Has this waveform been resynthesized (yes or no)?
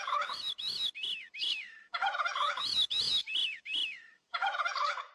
yes